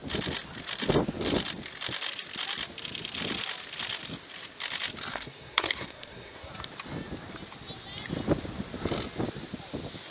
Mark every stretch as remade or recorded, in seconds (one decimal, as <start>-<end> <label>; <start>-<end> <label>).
0.0-5.1 recorded; 5.1-6.5 remade; 6.5-10.1 recorded